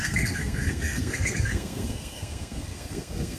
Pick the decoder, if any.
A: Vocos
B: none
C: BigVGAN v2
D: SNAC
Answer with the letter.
D